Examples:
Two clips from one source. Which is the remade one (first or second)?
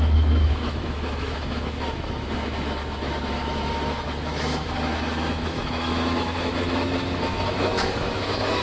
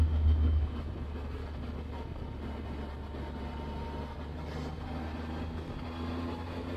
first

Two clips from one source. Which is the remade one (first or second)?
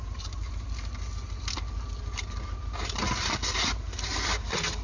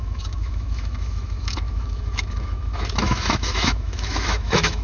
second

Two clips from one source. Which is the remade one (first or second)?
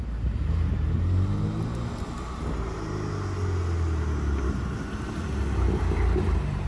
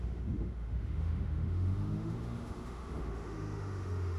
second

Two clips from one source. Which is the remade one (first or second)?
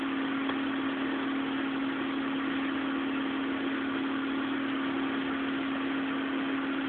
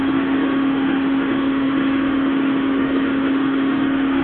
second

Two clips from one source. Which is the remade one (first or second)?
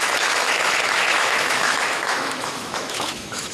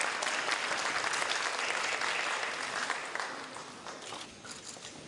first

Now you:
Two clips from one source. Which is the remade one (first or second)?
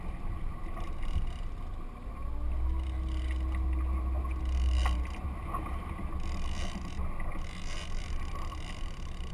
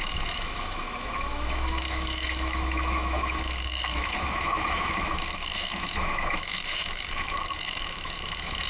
second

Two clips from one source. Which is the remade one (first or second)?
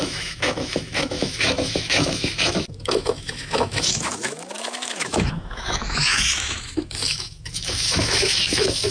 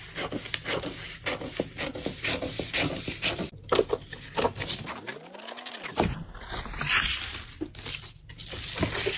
first